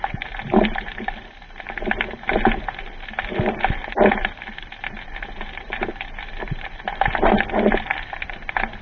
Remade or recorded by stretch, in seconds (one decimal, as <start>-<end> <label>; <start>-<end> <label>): 0.0-8.8 recorded